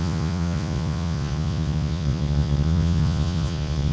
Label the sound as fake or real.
fake